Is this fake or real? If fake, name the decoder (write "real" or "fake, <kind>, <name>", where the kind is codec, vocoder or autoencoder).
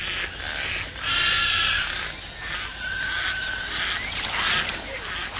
real